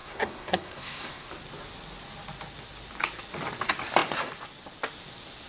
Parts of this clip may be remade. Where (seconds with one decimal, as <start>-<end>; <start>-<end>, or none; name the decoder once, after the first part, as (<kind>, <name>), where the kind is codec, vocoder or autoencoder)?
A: 0.0-1.3 (codec, SNAC)